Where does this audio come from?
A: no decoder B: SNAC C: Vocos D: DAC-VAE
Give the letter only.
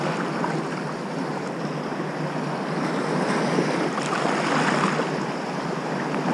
A